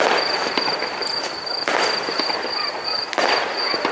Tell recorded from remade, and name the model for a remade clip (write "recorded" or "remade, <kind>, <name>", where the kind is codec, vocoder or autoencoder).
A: recorded